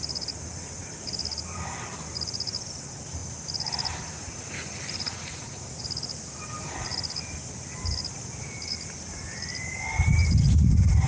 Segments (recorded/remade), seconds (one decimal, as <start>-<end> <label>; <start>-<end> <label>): 0.0-5.1 recorded; 5.1-5.8 remade; 5.8-11.1 recorded